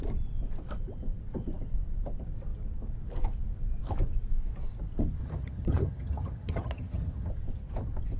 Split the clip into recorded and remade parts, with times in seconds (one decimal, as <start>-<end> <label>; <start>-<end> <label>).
0.0-5.2 recorded; 5.2-7.3 remade; 7.3-8.2 recorded